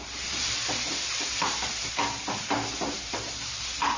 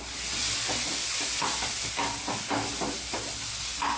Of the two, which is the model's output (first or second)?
first